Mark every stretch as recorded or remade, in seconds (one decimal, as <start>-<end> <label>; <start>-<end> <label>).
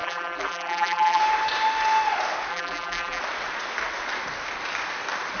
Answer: 0.0-1.2 remade; 1.2-2.5 recorded; 2.5-3.2 remade; 3.2-5.4 recorded